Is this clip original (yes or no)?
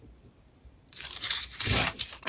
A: no